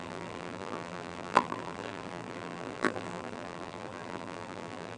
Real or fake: fake